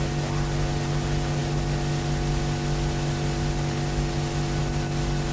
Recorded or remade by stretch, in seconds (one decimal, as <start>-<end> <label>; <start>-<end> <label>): 0.0-5.3 recorded